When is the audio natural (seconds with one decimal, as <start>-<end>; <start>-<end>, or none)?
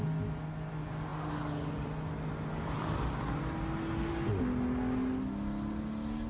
0.0-6.3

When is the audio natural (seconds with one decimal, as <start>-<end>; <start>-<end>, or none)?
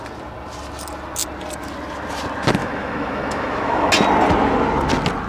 0.0-2.6; 3.9-5.3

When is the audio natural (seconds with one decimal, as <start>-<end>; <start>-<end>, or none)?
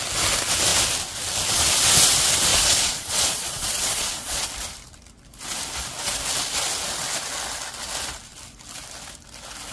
0.0-2.5; 4.5-9.7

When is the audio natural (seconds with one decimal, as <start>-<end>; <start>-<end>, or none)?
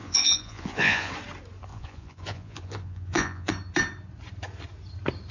1.1-1.7; 3.5-5.3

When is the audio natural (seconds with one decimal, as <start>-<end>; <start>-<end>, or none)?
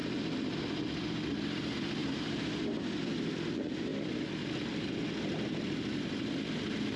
0.0-0.6; 3.9-5.5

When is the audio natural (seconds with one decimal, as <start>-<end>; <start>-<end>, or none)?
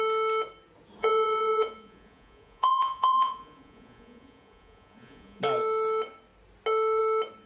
0.0-1.0; 5.4-7.5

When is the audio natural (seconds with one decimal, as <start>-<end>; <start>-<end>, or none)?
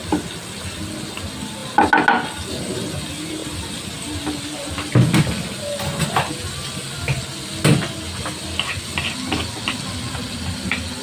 0.0-11.0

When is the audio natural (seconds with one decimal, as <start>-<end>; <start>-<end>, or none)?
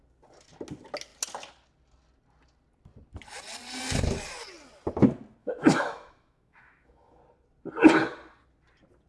0.0-5.4; 7.2-9.1